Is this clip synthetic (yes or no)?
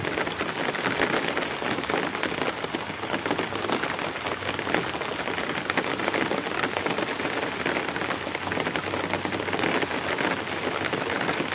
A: no